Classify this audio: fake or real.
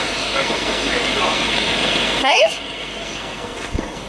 fake